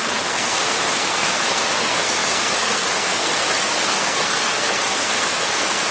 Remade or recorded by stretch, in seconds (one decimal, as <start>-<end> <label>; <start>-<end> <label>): 0.0-5.9 remade